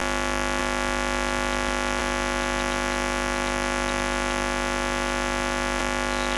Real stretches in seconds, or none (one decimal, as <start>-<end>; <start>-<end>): 0.0-6.4